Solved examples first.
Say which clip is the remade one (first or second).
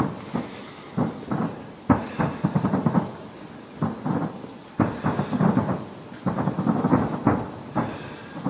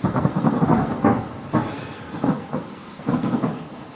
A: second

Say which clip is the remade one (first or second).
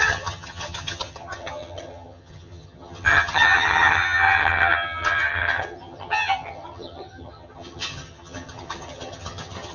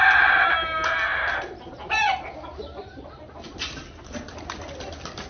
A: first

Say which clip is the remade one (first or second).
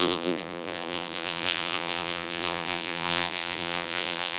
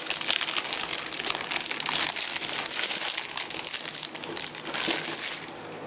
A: first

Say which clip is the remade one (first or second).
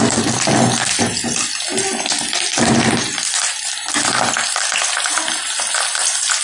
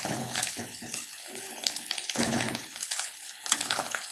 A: second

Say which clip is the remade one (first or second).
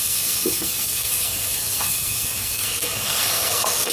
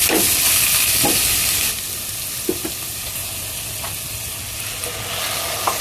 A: first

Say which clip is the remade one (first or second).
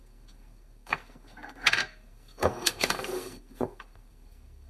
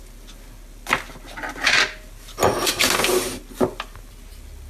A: first